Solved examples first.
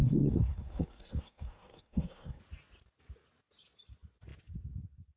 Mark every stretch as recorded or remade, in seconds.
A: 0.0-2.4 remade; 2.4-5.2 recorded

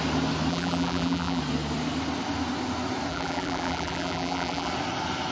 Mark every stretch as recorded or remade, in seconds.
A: 0.0-0.5 recorded; 0.5-1.4 remade; 1.4-3.1 recorded; 3.1-4.7 remade; 4.7-5.3 recorded